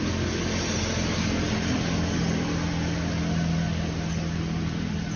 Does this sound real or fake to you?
real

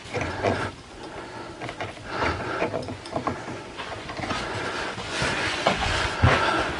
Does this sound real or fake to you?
fake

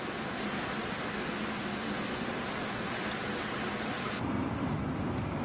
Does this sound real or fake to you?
real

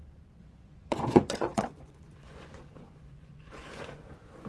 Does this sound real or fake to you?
fake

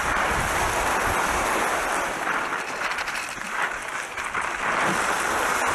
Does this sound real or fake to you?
real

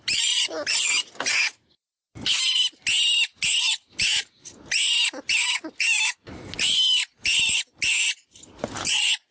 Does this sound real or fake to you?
real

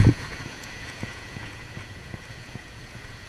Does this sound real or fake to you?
fake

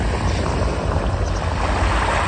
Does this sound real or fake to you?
real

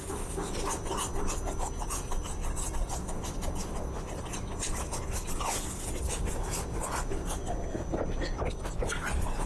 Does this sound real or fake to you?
real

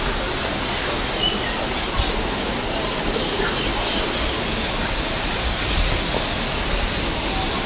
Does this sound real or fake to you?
real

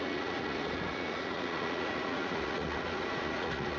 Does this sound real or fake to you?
fake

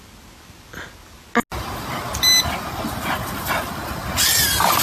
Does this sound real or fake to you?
real